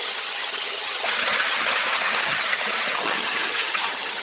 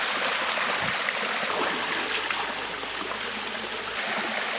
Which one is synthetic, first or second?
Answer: first